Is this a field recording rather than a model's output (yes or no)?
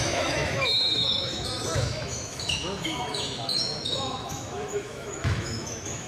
no